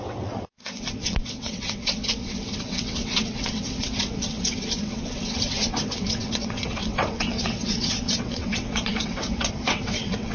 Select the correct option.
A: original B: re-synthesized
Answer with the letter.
B